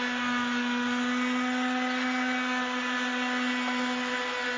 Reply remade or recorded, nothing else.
recorded